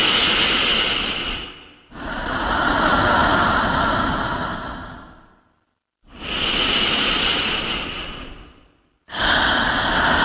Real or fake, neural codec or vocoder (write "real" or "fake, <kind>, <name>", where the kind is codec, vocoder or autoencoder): real